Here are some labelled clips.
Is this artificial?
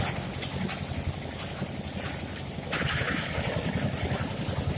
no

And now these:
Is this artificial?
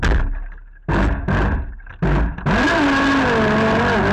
no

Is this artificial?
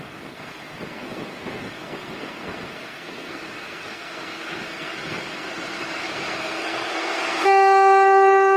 yes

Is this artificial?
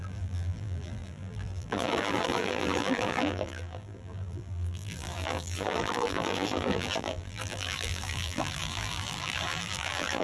yes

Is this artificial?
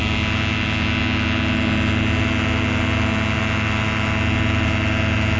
no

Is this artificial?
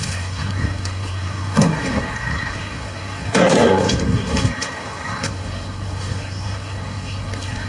yes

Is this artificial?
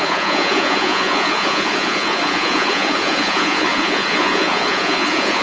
yes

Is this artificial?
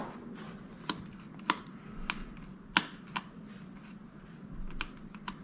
no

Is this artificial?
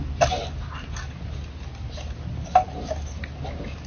no